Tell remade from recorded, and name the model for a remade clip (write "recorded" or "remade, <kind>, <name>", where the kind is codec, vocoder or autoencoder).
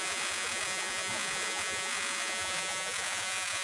remade, vocoder, Vocos